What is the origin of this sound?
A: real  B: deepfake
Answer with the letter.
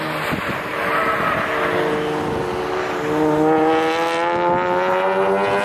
A